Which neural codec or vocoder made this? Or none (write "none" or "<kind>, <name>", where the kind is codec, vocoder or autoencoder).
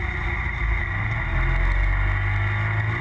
none